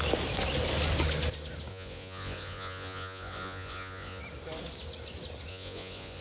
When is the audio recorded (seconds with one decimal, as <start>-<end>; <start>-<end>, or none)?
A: 0.0-1.7; 4.2-5.5